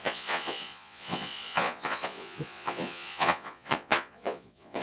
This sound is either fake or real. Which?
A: fake